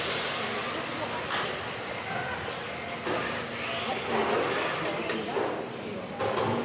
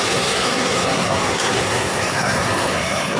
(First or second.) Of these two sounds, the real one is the first